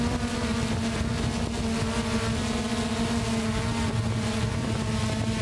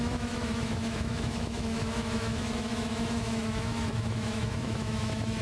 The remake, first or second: second